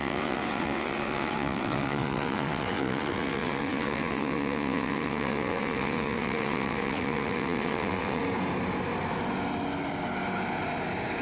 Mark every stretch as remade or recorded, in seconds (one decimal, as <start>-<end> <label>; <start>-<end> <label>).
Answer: 0.0-8.2 remade; 8.2-11.2 recorded